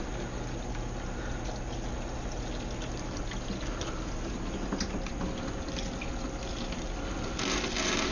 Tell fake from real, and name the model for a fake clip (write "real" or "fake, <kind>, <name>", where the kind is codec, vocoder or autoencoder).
real